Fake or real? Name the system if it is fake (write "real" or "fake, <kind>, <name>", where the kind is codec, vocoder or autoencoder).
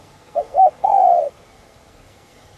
fake, codec, SNAC